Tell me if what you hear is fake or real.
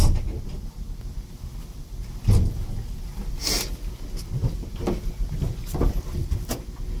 real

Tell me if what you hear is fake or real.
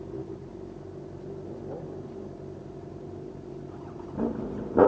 real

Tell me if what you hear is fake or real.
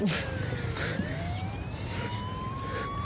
fake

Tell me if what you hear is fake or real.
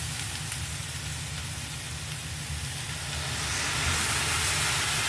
real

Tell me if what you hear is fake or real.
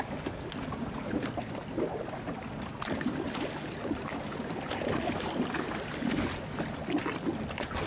real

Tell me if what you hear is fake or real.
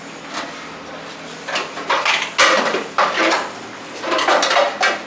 real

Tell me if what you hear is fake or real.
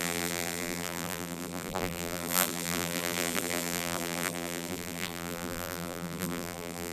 fake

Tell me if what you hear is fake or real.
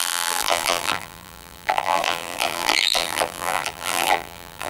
fake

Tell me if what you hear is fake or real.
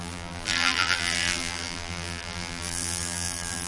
fake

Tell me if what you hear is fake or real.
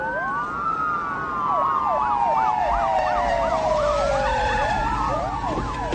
fake